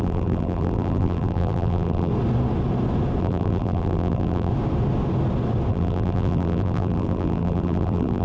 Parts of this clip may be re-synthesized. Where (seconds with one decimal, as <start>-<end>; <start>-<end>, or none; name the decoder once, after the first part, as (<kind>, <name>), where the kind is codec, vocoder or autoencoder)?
0.0-2.1 (vocoder, BigVGAN v2); 3.2-4.5; 5.7-8.2